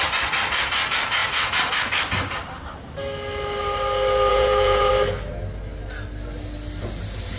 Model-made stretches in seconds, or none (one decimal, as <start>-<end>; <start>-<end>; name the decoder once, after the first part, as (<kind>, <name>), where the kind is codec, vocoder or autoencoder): 4.3-4.9 (vocoder, Vocos)